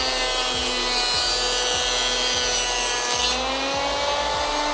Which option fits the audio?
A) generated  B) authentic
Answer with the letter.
B